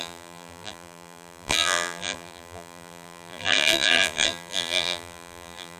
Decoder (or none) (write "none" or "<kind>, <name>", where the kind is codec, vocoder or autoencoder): vocoder, BigVGAN v2